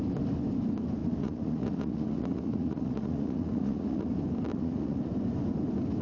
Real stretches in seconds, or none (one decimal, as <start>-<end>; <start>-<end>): 0.0-1.0; 4.1-4.5; 5.1-6.0